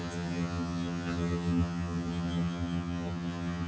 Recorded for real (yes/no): no